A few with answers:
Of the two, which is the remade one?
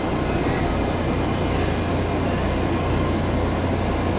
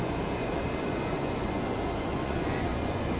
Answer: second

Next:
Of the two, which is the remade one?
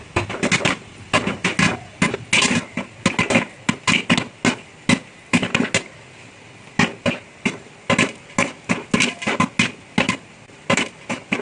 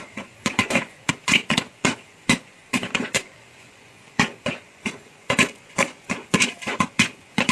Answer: second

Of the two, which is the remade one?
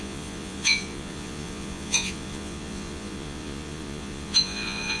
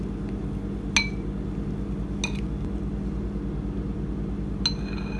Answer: first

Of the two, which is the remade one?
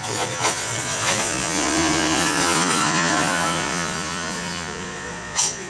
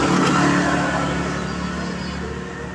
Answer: first